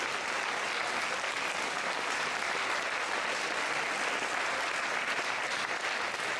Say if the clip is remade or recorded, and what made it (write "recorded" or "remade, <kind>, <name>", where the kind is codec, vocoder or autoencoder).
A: recorded